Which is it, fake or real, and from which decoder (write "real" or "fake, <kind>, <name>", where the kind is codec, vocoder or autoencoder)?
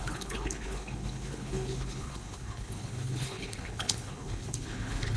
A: fake, codec, HILCodec